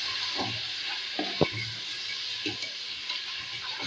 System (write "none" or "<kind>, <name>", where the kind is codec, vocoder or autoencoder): none